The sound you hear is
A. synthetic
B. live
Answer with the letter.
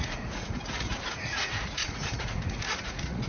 A